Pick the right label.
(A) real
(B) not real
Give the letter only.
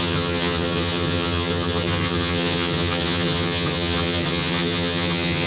B